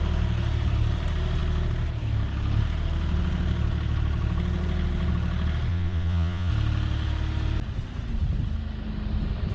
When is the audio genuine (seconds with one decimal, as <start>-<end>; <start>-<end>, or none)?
0.0-5.7; 6.5-9.5